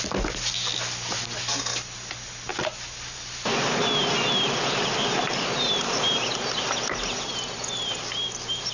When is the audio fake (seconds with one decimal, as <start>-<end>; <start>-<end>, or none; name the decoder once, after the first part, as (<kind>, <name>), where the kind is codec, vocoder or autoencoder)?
none